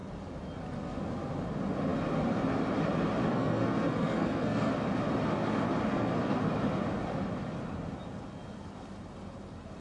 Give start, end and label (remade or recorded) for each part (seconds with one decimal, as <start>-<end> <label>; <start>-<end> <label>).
0.0-3.3 recorded; 3.3-4.7 remade; 4.7-5.9 recorded; 5.9-6.4 remade; 6.4-9.8 recorded